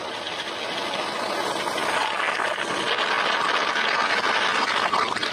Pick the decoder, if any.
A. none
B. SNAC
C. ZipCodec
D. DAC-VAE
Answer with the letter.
A